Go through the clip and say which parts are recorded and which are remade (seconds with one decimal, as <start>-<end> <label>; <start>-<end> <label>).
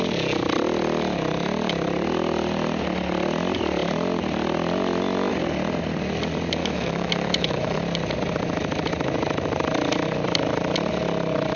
0.0-6.6 recorded; 6.6-7.8 remade; 7.8-11.6 recorded